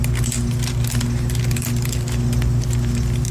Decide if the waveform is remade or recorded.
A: recorded